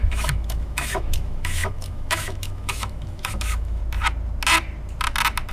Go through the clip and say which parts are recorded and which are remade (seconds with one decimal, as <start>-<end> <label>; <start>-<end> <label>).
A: 0.0-3.8 remade; 3.8-5.5 recorded